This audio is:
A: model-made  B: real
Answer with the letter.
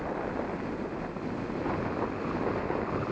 B